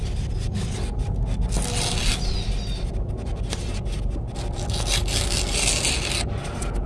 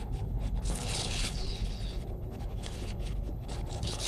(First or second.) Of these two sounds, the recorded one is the first